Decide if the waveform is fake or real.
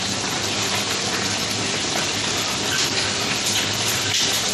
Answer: real